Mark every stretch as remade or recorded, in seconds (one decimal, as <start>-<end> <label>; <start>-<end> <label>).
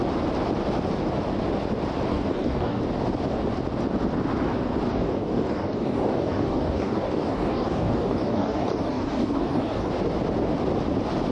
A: 0.0-2.1 recorded; 2.1-2.8 remade; 2.8-4.9 recorded; 4.9-9.9 remade; 9.9-11.3 recorded